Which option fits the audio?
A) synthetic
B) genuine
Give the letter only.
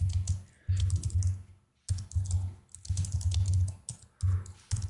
B